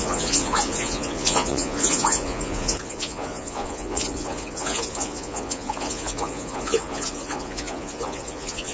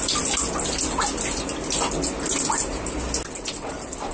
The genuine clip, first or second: second